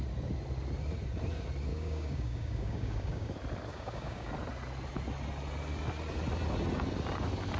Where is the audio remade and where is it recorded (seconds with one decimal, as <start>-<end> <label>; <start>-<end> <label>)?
0.0-1.7 recorded; 1.7-3.3 remade; 3.3-3.7 recorded; 3.7-4.3 remade; 4.3-7.6 recorded